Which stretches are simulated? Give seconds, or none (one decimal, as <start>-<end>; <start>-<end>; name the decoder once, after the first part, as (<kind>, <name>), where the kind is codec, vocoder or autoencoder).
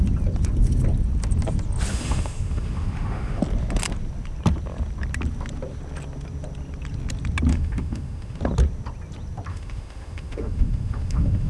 1.9-3.4 (autoencoder, DAC-VAE); 7.5-8.4; 9.5-11.5